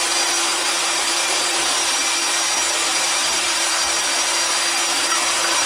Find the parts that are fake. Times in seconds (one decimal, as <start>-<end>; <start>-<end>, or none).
0.5-1.6; 2.9-3.7